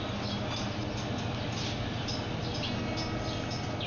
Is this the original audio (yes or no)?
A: yes